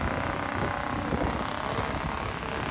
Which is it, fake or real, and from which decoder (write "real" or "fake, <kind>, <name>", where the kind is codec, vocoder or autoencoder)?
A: real